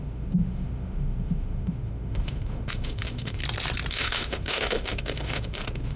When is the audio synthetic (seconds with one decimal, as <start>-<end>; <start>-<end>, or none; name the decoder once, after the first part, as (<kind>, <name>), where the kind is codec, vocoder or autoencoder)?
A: 0.0-3.4 (autoencoder, DAC-VAE); 3.9-6.0

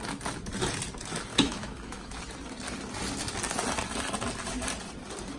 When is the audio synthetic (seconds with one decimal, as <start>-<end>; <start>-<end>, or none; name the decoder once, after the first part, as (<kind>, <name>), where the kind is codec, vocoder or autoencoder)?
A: 1.3-2.2 (autoencoder, DAC-VAE)

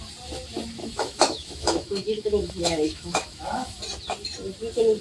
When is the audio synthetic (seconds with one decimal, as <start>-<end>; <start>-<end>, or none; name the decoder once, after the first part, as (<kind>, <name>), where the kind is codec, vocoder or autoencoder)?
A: 0.8-3.8 (autoencoder, DAC-VAE)

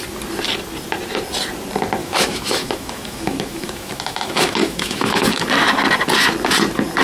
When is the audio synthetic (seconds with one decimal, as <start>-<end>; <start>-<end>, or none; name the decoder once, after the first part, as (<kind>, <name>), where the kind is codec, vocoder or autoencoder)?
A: 2.0-5.4 (autoencoder, DAC-VAE)

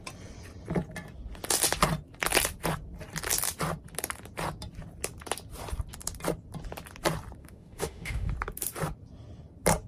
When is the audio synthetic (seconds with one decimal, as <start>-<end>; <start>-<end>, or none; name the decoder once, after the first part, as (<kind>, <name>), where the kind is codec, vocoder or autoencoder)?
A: 7.4-8.3 (autoencoder, DAC-VAE)

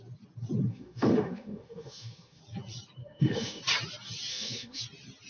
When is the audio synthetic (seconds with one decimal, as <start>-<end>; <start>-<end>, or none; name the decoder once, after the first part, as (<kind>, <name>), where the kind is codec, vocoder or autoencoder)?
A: 0.7-2.4 (autoencoder, DAC-VAE); 3.0-3.6; 4.3-4.8